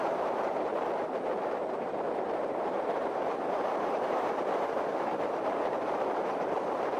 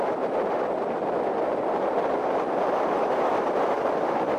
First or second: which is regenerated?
first